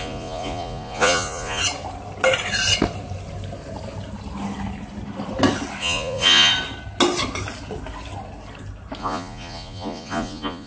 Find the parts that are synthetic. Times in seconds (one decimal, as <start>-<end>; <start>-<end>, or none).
0.0-1.6; 5.8-6.5; 9.0-10.7

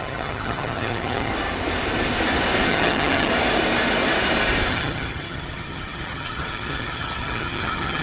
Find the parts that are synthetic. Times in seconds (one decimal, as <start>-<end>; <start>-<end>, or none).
0.0-1.3; 2.7-3.3; 4.7-8.0

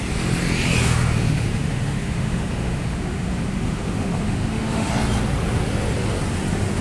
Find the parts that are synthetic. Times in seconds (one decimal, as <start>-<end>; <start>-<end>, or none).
0.8-4.9

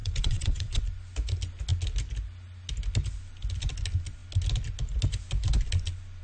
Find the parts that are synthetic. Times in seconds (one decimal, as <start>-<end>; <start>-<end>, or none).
0.0-0.8

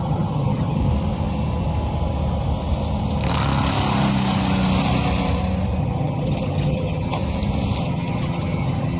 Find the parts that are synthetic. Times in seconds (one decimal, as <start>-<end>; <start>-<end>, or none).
0.0-0.8; 5.8-7.2; 7.8-9.0

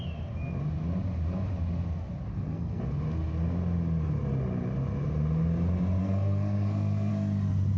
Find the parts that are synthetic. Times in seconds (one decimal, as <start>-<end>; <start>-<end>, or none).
2.3-2.8; 6.0-7.1

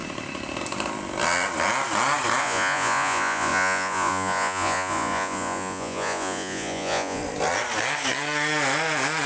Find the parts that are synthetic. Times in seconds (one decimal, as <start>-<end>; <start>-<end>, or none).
2.4-7.2

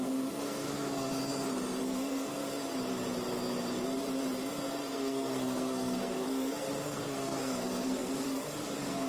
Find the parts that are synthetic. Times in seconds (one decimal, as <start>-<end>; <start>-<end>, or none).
0.0-1.1; 1.8-2.4; 4.8-9.1